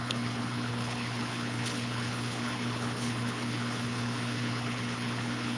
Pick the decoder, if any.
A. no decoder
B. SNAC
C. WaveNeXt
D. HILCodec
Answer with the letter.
D